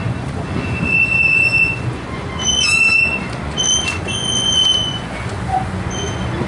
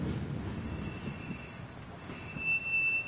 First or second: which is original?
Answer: second